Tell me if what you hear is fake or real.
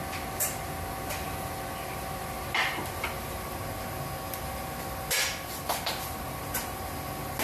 real